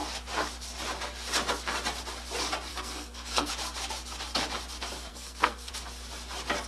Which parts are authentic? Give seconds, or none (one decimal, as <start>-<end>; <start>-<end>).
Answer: 0.0-2.7; 3.5-5.1; 5.7-6.7